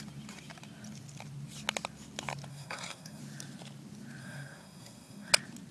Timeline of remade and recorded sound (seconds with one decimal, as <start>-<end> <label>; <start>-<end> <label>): 0.0-2.5 recorded; 2.5-3.2 remade; 3.2-4.2 recorded; 4.2-5.3 remade; 5.3-5.7 recorded